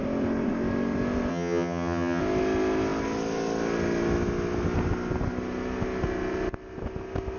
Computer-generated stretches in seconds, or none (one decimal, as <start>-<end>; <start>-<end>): 1.3-2.2